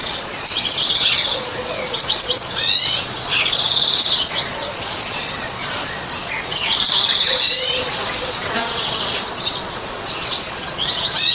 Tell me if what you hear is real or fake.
fake